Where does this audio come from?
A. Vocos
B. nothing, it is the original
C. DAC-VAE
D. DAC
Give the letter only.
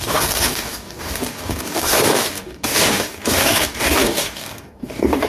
D